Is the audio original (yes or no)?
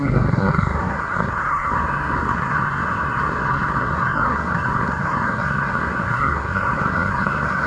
no